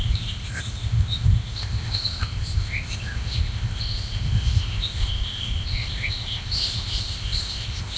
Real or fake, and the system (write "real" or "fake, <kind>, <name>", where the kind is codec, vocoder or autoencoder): fake, codec, ZipCodec